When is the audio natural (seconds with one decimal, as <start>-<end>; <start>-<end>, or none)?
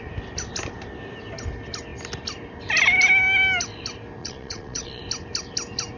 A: 0.0-4.2; 5.0-6.0